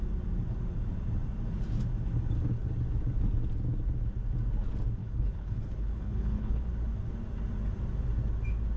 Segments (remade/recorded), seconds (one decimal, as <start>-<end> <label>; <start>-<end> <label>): 0.0-5.0 recorded; 5.0-6.6 remade; 6.6-8.8 recorded